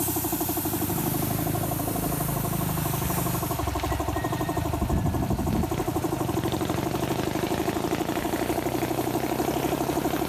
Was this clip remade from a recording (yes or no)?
no